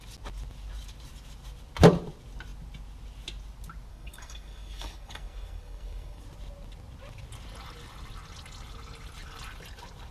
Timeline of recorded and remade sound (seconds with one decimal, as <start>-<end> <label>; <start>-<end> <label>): 0.0-3.9 recorded; 3.9-6.2 remade; 6.2-10.1 recorded